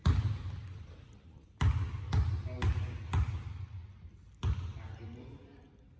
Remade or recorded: recorded